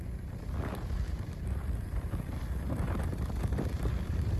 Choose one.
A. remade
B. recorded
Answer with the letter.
A